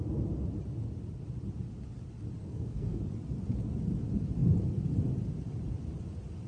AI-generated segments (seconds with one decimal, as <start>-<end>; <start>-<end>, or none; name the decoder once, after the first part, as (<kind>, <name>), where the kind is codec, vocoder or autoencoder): 2.4-3.0 (codec, SNAC)